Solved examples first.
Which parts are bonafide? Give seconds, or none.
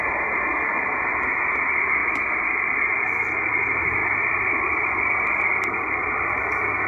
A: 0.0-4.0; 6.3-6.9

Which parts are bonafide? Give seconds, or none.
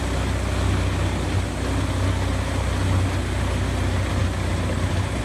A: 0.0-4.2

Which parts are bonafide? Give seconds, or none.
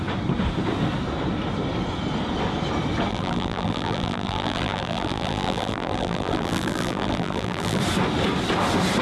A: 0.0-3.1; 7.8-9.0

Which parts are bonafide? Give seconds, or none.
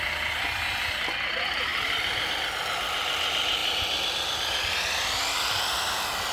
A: 0.0-6.3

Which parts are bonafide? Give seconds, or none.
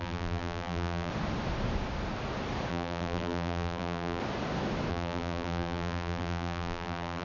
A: 1.1-2.7; 4.2-4.9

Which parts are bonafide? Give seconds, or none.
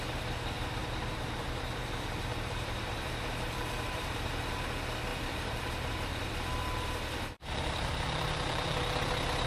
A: 0.0-0.8; 1.8-2.3; 4.3-5.1; 9.1-9.5